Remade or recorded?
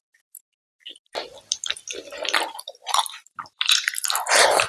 remade